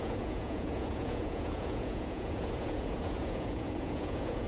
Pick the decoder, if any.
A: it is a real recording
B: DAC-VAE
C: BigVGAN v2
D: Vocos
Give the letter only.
D